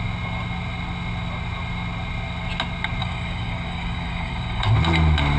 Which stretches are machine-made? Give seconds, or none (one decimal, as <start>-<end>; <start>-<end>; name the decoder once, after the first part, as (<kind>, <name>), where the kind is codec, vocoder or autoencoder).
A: 3.0-4.7 (codec, DAC)